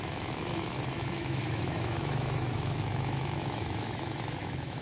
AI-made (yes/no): yes